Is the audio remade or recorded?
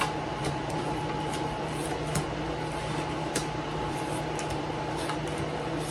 recorded